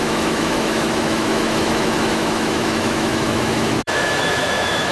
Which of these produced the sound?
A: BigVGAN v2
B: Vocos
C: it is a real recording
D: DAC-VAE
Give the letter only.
D